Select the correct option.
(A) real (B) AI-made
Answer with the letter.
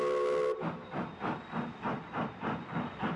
A